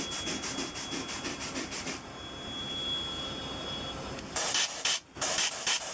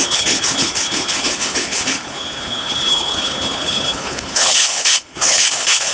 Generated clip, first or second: second